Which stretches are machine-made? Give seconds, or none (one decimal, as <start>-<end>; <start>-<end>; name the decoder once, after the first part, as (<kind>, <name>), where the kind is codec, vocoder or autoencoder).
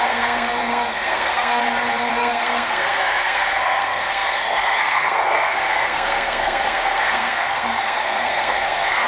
0.0-1.6 (codec, SNAC); 2.1-9.1